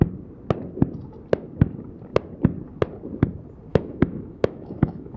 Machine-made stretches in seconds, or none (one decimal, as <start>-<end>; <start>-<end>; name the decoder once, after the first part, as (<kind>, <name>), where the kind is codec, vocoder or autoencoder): 3.7-5.2 (autoencoder, DAC-VAE)